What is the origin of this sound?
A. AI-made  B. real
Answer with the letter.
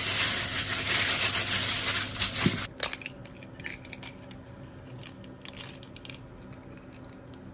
B